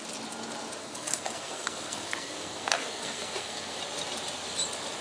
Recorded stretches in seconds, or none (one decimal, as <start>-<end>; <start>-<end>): 0.0-0.8; 3.8-5.0